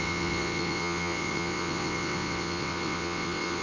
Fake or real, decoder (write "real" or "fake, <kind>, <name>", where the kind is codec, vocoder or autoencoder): fake, vocoder, WaveNeXt